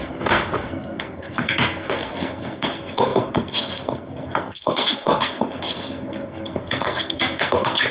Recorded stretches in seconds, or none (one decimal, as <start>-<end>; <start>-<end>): none